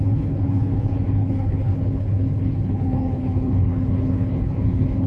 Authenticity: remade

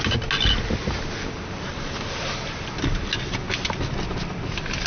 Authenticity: recorded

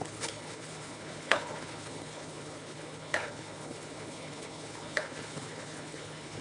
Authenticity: remade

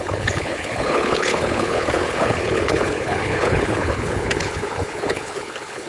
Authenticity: remade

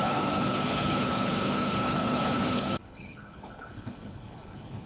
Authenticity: remade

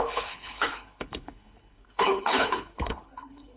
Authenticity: remade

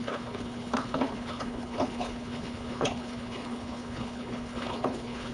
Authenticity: remade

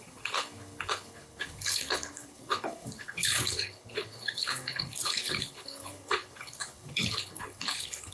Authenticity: remade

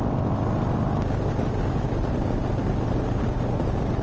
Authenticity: recorded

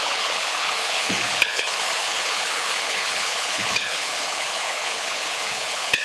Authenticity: remade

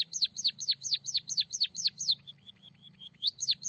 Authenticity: remade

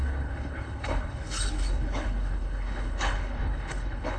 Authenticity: remade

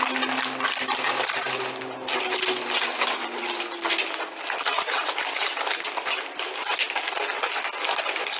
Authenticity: recorded